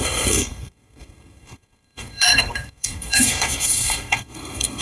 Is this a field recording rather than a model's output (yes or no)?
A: no